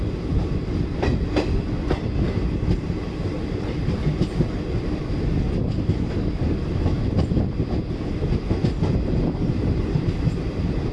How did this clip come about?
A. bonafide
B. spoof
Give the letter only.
A